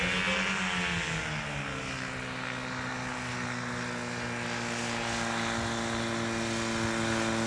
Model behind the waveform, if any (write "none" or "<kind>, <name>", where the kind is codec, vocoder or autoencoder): none